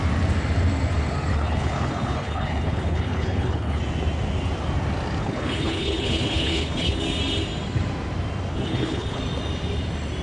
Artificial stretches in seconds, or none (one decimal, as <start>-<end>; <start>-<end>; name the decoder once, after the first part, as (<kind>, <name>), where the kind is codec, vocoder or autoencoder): 1.3-3.8 (codec, HILCodec); 5.2-7.0; 8.5-9.2